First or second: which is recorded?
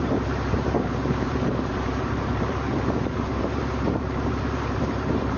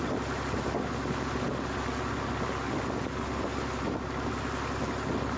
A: second